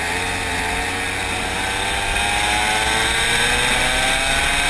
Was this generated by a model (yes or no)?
no